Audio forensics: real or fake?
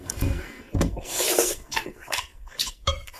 fake